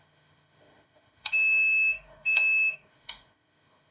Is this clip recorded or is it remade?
remade